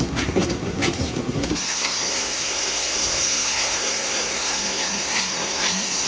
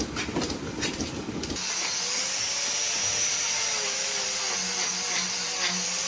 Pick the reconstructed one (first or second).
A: first